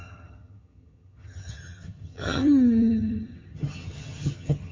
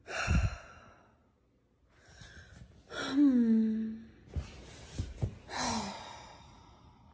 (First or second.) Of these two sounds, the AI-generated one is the first